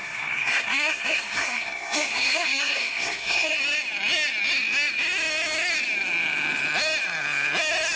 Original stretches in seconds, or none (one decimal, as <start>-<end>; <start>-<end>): 3.5-8.0